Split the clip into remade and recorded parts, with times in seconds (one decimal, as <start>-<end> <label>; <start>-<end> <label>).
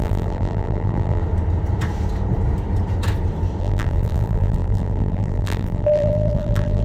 0.0-1.2 remade; 1.2-3.6 recorded; 3.6-6.8 remade